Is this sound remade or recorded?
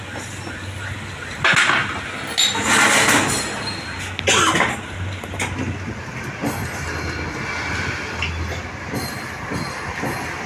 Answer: recorded